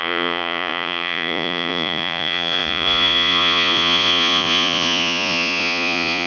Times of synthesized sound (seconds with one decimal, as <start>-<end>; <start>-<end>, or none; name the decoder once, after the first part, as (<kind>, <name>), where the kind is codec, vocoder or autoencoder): 0.0-6.3 (vocoder, Vocos)